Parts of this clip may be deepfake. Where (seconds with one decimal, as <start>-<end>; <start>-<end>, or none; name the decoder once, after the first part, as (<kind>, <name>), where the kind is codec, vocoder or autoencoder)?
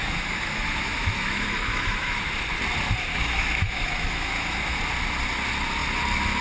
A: 0.0-2.2 (autoencoder, DAC-VAE); 3.1-4.8